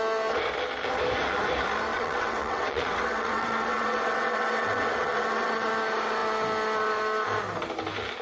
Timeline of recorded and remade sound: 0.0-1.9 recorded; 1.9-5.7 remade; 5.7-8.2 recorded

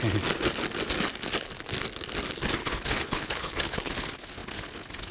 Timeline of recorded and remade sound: 0.0-2.6 recorded; 2.6-3.9 remade; 3.9-5.1 recorded